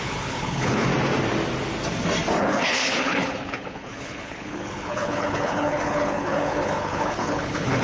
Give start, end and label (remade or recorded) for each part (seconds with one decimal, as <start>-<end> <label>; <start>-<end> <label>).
0.0-0.9 remade; 0.9-2.4 recorded; 2.4-7.8 remade